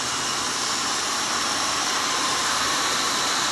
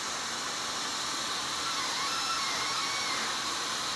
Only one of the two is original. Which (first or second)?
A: second